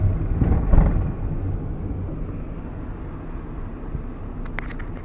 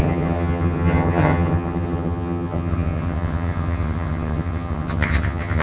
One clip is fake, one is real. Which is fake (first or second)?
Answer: second